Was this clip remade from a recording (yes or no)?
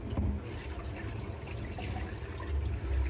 no